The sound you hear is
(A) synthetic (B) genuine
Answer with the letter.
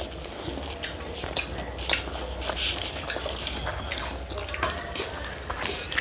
B